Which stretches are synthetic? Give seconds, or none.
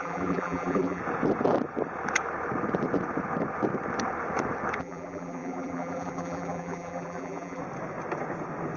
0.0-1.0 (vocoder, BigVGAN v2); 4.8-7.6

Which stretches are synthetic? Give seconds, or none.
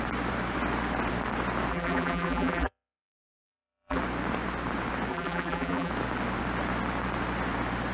1.7-4.0 (vocoder, BigVGAN v2); 5.1-5.9